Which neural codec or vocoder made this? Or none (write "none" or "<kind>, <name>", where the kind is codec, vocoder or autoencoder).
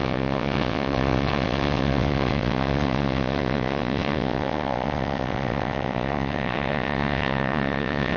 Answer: vocoder, WaveNeXt